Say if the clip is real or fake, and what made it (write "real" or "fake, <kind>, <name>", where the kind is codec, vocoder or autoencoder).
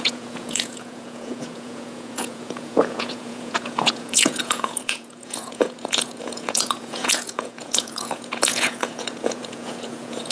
fake, vocoder, Vocos